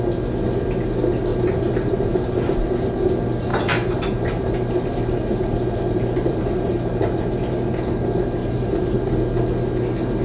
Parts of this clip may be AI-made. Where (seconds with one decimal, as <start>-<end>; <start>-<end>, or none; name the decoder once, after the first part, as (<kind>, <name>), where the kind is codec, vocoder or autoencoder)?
1.3-2.6 (vocoder, BigVGAN v2); 3.5-7.5; 8.4-9.0